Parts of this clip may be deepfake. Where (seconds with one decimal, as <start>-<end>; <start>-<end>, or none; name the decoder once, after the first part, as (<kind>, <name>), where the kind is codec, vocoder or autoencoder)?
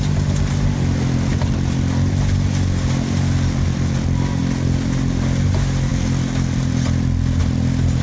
none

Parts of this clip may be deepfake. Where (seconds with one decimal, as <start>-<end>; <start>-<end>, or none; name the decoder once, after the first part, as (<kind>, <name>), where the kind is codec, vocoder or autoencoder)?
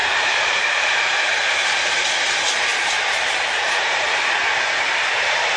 0.0-0.8 (vocoder, BigVGAN v2); 2.7-4.2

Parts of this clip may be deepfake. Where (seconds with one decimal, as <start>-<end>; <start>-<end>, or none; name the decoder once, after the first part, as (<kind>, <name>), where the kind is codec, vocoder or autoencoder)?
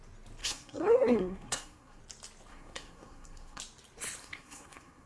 0.4-2.0 (codec, SNAC); 2.5-3.6; 4.2-5.1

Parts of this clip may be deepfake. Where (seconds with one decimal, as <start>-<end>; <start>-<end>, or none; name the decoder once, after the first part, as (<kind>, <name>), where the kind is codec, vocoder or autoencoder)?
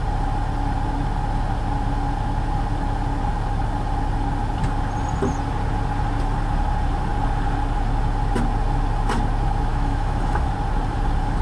9.7-10.5 (autoencoder, DAC-VAE)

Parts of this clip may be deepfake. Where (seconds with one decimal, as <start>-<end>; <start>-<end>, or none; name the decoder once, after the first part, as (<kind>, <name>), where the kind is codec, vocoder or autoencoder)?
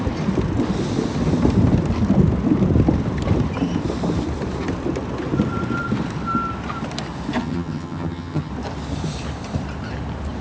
7.4-8.5 (vocoder, HiFi-GAN)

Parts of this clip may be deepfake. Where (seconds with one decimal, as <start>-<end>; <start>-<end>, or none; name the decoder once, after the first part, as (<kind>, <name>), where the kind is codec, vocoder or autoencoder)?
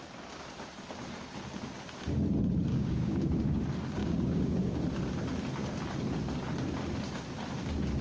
2.7-3.6 (codec, DAC); 4.0-4.8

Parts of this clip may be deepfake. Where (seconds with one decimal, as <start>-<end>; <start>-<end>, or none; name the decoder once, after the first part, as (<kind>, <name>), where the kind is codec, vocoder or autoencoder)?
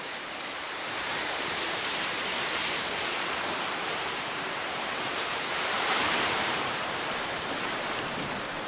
0.0-2.6 (vocoder, BigVGAN v2); 3.7-8.7